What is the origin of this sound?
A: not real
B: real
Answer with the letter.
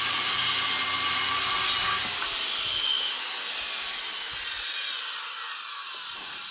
B